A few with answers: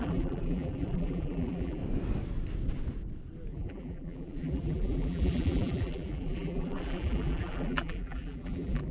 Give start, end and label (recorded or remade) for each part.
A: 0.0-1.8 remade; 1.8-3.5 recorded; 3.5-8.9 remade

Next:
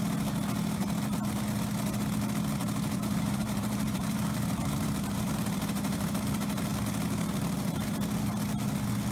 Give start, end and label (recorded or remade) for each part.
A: 0.0-2.6 recorded; 2.6-6.1 remade; 6.1-9.1 recorded